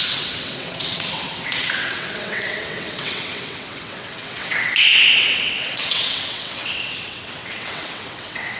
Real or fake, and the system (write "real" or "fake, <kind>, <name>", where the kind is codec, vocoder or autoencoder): fake, vocoder, WaveNeXt